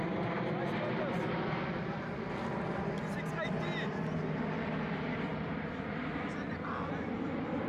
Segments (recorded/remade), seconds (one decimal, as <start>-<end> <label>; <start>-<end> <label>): 0.0-5.3 recorded; 5.3-6.0 remade; 6.0-7.7 recorded